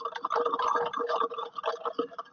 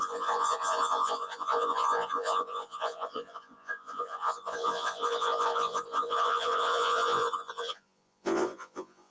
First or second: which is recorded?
first